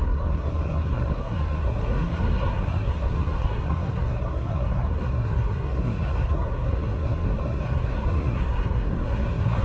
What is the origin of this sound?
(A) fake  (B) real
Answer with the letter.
A